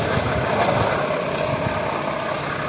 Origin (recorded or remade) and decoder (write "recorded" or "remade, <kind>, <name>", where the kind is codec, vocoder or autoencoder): recorded